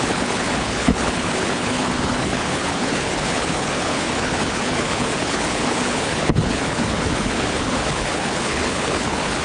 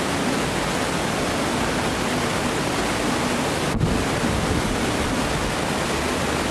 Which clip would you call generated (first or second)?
first